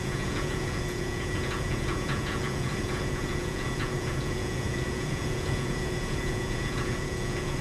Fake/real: fake